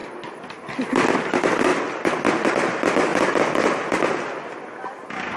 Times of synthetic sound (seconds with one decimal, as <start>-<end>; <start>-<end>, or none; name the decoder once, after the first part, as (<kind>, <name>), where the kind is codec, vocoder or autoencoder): none